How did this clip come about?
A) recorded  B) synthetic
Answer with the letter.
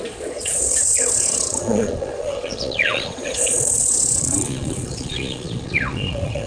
B